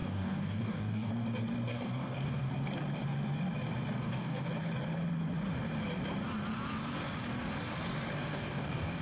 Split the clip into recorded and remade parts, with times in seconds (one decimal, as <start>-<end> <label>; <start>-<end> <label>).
0.0-1.1 remade; 1.1-1.7 recorded; 1.7-2.5 remade; 2.5-4.0 recorded; 4.0-4.5 remade; 4.5-8.3 recorded; 8.3-9.0 remade